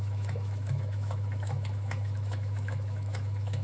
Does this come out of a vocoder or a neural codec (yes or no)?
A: yes